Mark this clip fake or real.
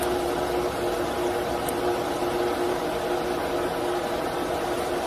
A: real